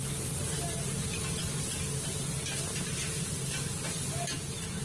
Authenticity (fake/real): real